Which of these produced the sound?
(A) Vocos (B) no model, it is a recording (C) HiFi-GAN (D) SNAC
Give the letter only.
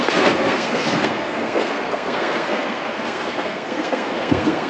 D